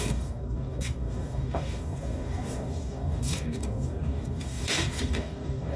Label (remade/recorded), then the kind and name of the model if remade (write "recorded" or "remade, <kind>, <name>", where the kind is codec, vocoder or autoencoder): remade, codec, DAC